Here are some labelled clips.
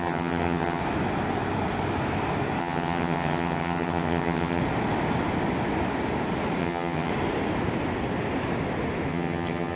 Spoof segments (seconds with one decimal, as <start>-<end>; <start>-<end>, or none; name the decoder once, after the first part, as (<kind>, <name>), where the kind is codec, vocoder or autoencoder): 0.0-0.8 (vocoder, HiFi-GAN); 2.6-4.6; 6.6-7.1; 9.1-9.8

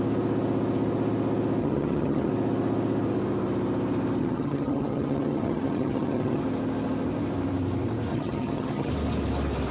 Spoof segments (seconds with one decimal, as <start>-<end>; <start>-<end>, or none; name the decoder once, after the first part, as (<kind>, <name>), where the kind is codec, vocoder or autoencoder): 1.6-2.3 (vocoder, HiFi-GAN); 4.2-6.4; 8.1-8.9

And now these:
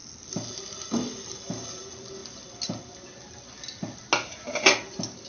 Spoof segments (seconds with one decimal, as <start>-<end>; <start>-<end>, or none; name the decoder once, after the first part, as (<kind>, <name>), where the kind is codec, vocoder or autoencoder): none

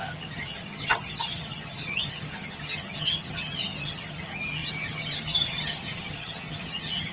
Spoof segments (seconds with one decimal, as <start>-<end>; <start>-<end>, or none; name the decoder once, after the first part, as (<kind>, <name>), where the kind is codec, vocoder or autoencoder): 0.0-7.1 (vocoder, HiFi-GAN)

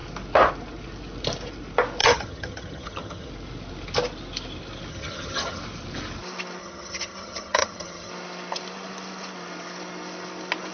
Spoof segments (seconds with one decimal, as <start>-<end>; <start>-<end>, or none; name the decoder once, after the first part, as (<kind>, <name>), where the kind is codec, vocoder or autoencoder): 2.0-3.3 (vocoder, HiFi-GAN); 4.9-5.6; 6.6-8.1